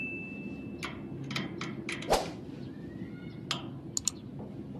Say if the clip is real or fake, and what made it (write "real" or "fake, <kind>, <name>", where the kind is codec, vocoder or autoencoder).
real